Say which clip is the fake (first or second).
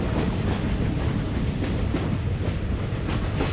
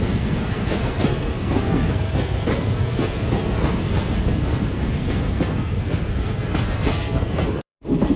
second